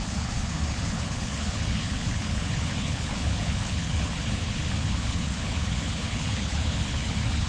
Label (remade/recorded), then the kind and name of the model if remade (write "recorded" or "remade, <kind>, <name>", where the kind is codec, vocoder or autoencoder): remade, codec, HILCodec